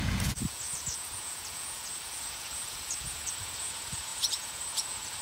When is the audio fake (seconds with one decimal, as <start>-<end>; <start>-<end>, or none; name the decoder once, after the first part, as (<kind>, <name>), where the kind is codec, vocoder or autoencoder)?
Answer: 0.0-5.2 (vocoder, Vocos)